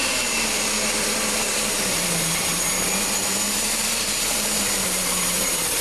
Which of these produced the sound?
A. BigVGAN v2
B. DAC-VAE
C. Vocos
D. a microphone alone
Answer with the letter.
A